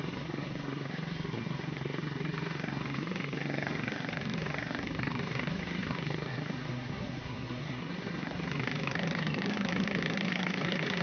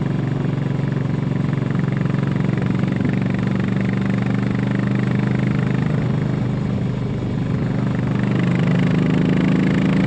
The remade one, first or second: first